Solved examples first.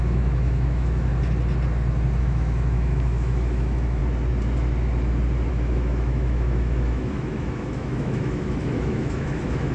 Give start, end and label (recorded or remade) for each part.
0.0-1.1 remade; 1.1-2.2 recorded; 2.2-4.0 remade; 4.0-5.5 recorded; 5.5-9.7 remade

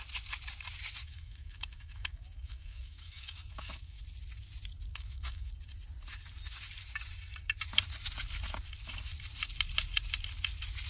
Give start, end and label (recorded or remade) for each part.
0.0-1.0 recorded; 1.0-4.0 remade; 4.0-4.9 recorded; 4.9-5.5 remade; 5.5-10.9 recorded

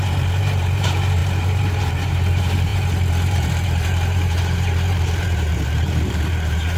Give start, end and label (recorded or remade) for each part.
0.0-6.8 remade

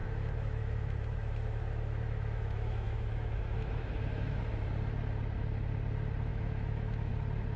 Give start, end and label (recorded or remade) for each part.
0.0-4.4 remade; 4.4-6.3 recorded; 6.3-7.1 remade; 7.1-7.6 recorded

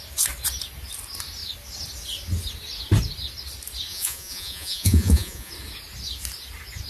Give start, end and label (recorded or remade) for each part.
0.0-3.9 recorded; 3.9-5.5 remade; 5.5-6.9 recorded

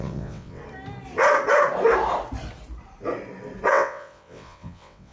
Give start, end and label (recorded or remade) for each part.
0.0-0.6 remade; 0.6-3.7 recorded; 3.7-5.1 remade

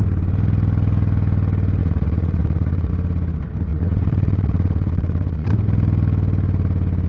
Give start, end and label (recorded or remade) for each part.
0.0-1.8 recorded; 1.8-2.9 remade; 2.9-3.7 recorded; 3.7-5.5 remade; 5.5-7.1 recorded